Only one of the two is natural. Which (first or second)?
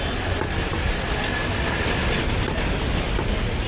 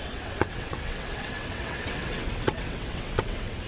first